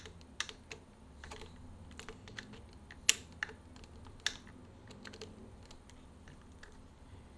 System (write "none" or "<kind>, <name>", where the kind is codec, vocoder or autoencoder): none